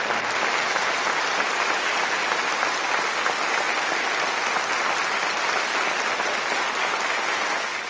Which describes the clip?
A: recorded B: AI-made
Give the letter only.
A